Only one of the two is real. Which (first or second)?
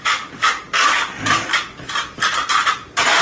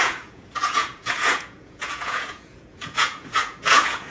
first